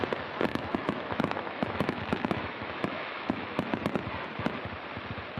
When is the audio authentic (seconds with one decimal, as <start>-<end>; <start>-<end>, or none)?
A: 0.0-0.5; 3.7-5.4